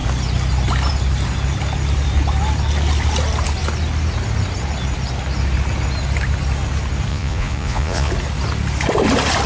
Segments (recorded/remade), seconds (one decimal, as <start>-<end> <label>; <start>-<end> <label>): 0.0-7.1 recorded; 7.1-8.1 remade; 8.1-9.5 recorded